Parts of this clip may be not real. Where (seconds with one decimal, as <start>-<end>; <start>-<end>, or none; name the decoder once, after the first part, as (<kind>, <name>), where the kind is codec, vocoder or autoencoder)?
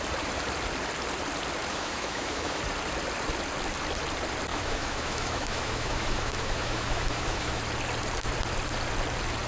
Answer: 1.7-2.6 (autoencoder, DAC-VAE); 4.5-7.6